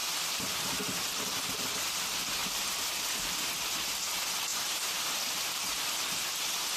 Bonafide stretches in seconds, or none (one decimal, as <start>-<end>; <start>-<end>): 0.7-2.4; 3.3-4.5